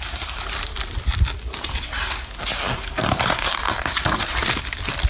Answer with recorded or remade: recorded